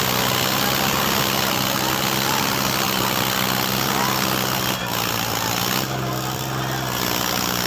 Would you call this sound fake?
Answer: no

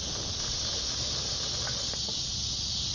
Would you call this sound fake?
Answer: no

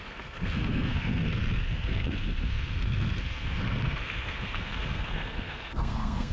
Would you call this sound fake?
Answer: yes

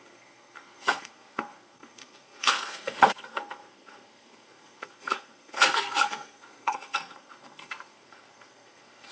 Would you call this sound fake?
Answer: yes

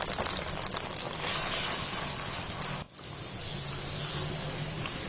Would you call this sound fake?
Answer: no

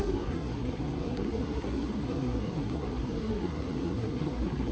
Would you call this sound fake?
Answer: yes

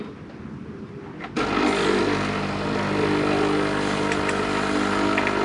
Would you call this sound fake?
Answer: no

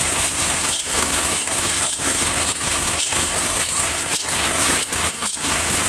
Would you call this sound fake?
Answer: yes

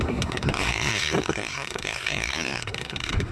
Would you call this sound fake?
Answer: yes